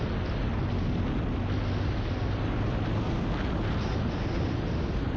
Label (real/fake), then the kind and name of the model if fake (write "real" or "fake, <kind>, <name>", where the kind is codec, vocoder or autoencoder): real